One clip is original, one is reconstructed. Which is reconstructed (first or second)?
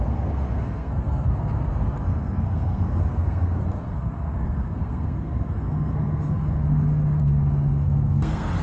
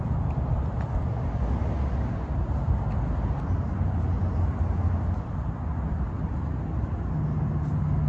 first